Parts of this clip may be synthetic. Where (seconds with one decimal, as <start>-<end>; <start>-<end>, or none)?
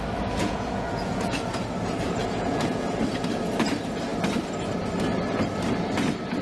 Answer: 0.4-1.5; 2.2-3.0